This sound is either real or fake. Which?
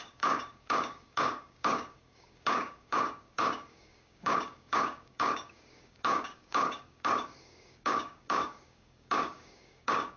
fake